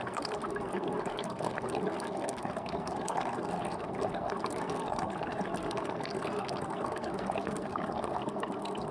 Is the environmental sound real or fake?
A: fake